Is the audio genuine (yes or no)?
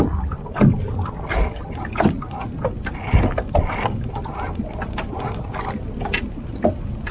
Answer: yes